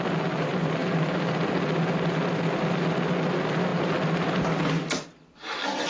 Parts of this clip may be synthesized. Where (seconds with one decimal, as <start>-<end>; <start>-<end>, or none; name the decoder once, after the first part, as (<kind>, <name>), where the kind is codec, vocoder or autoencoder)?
none